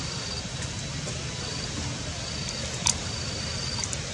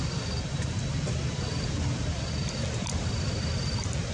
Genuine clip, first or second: first